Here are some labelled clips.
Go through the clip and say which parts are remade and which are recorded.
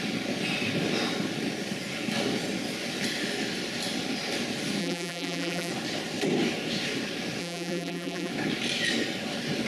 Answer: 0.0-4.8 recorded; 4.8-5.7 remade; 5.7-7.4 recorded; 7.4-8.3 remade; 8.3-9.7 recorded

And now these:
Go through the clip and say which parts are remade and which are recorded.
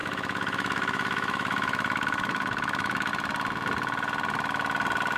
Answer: 0.0-3.1 remade; 3.1-5.2 recorded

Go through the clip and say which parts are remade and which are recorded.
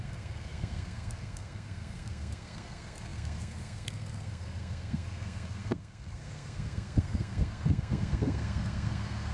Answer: 0.0-9.3 remade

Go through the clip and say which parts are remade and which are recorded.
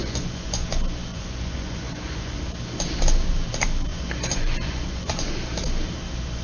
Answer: 0.0-0.7 remade; 0.7-1.1 recorded; 1.1-2.4 remade; 2.4-3.9 recorded; 3.9-5.3 remade; 5.3-6.4 recorded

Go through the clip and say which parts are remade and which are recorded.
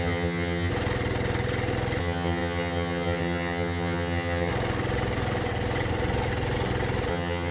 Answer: 0.0-0.7 remade; 0.7-2.0 recorded; 2.0-4.5 remade; 4.5-7.1 recorded; 7.1-7.5 remade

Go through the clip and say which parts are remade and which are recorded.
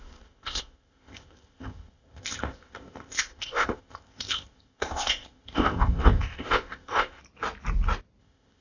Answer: 0.0-7.2 remade; 7.2-8.2 recorded; 8.2-8.6 remade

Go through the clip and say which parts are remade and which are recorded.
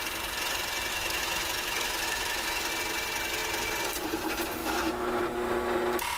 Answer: 0.0-0.9 recorded; 0.9-2.7 remade; 2.7-4.6 recorded; 4.6-5.2 remade; 5.2-6.2 recorded